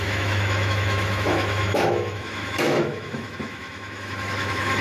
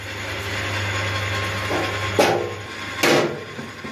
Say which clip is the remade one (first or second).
first